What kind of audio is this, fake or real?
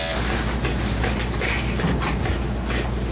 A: real